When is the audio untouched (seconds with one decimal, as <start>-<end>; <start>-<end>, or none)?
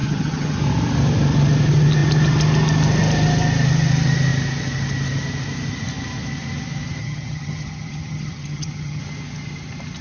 0.6-7.0; 9.0-10.0